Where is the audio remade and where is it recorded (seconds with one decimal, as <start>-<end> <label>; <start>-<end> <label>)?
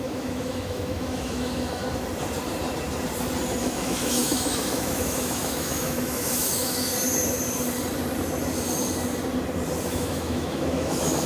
0.0-1.8 remade; 1.8-3.6 recorded; 3.6-6.9 remade; 6.9-9.9 recorded; 9.9-11.3 remade